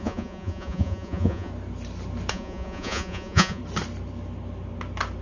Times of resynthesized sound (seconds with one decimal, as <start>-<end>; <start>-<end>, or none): 0.0-1.5; 2.3-3.6